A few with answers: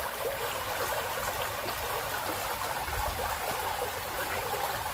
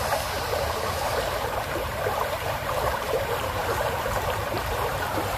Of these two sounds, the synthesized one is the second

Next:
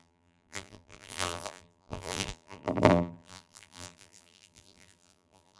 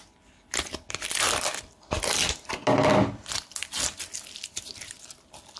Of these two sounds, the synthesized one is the first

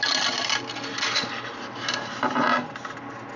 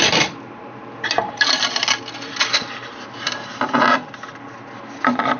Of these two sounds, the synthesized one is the second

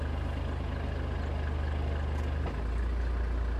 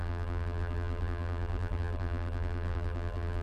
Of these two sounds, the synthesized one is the second